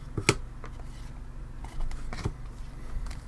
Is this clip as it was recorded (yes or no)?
yes